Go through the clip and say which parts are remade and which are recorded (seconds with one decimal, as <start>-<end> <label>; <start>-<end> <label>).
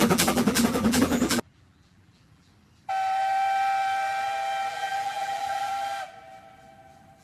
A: 0.0-2.5 remade; 2.5-4.7 recorded; 4.7-5.7 remade; 5.7-7.2 recorded